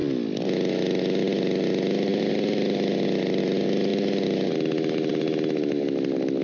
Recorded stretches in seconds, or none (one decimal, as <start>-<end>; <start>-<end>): 0.0-6.4